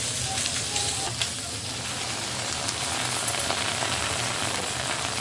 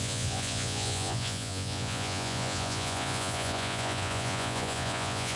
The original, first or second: first